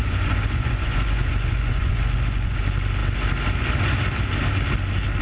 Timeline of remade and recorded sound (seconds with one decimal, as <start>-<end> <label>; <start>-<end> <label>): 0.0-2.6 remade; 2.6-5.2 recorded